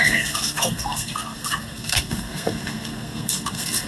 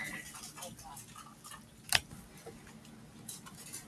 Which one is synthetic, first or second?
first